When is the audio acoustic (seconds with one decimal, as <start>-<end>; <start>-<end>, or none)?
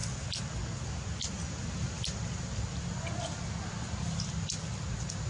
0.0-5.3